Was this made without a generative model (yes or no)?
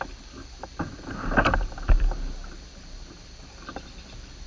yes